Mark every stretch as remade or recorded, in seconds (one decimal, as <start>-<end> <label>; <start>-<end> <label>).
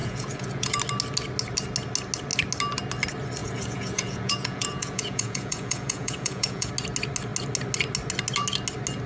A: 0.0-0.8 remade; 0.8-3.4 recorded; 3.4-6.7 remade; 6.7-9.1 recorded